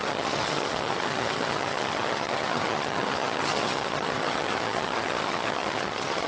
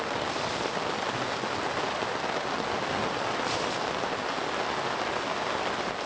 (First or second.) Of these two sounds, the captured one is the second